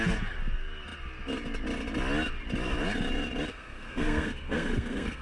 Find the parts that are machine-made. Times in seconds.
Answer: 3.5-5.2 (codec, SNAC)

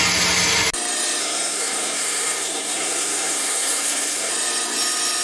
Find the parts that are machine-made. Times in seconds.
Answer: 1.2-4.3 (codec, SNAC)